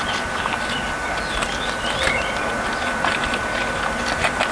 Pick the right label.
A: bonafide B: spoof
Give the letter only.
A